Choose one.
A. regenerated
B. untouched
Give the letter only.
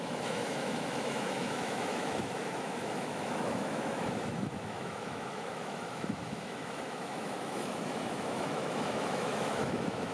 A